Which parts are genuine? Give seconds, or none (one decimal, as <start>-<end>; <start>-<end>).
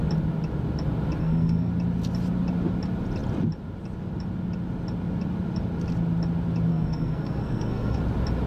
0.0-1.2; 1.7-6.7; 8.0-8.5